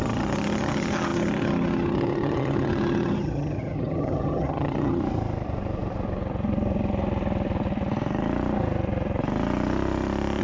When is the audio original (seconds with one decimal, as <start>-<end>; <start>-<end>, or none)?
5.0-10.4